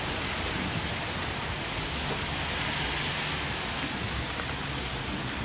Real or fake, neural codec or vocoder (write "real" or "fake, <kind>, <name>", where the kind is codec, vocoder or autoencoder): real